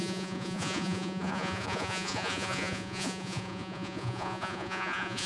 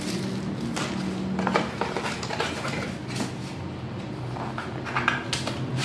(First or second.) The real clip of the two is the second